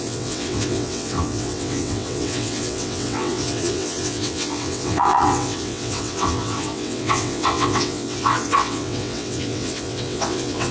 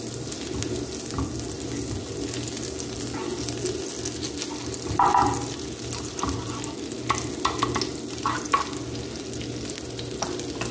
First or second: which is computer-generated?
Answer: first